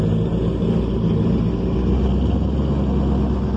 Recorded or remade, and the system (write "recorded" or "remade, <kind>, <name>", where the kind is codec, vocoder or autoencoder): recorded